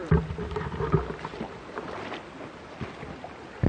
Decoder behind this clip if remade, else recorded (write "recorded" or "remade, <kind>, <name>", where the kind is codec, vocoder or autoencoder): recorded